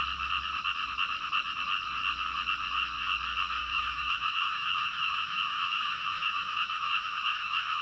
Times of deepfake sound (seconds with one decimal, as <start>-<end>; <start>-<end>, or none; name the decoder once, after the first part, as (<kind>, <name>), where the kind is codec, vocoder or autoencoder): 3.6-7.8 (autoencoder, DAC-VAE)